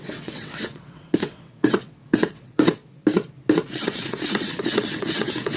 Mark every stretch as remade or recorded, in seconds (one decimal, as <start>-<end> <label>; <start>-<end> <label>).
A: 0.0-2.8 remade; 2.8-3.6 recorded; 3.6-5.6 remade